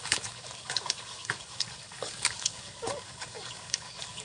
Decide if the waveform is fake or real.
fake